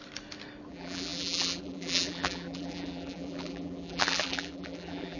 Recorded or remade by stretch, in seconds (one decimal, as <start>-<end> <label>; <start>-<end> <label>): 0.0-0.7 recorded; 0.7-5.2 remade